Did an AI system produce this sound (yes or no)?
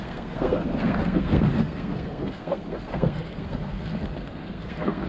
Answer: yes